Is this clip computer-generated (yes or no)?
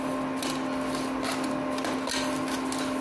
no